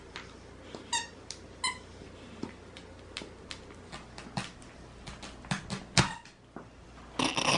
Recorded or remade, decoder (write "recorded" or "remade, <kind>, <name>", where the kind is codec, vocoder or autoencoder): recorded